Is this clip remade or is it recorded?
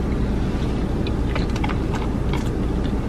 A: recorded